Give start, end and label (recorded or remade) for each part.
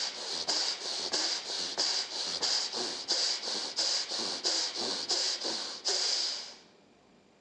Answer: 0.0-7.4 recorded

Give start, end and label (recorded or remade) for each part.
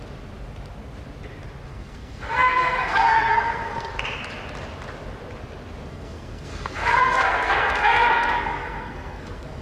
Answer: 0.0-1.7 recorded; 1.7-3.9 remade; 3.9-5.9 recorded; 5.9-9.6 remade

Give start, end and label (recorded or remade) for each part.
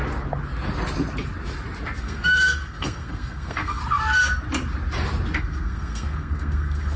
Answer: 0.0-2.0 recorded; 2.0-3.8 remade; 3.8-5.4 recorded; 5.4-7.0 remade